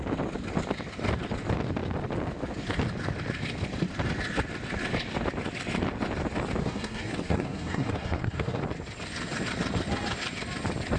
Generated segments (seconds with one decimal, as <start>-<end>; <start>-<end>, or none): 6.6-8.6